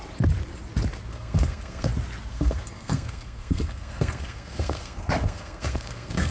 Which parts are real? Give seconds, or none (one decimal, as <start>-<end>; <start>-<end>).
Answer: 0.0-1.1; 1.9-2.3